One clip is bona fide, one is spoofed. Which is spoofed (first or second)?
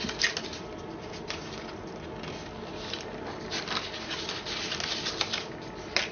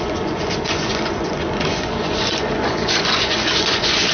second